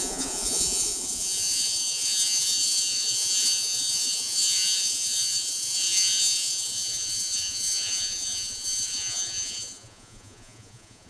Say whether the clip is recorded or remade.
remade